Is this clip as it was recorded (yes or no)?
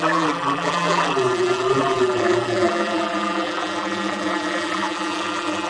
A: no